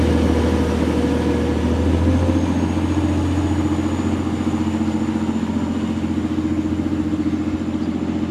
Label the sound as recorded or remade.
recorded